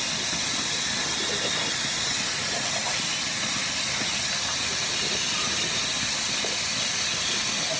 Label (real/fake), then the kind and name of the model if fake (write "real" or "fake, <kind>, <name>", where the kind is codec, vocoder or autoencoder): real